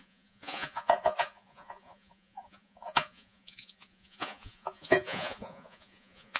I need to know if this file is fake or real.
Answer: fake